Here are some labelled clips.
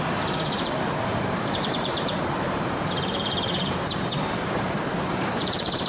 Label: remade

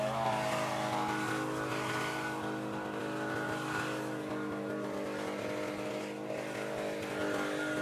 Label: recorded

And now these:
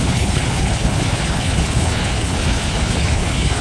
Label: remade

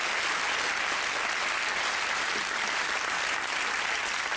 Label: recorded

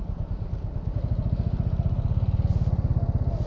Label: recorded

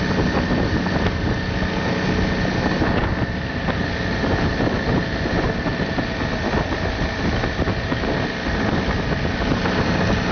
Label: recorded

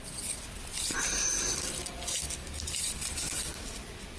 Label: recorded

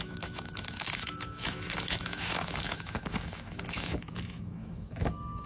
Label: remade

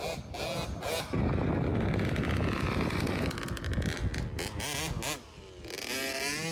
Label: recorded